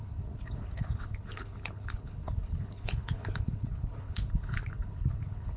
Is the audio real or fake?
fake